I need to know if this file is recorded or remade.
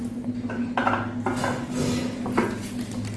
recorded